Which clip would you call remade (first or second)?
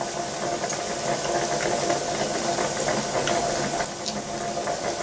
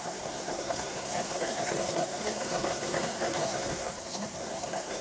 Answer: second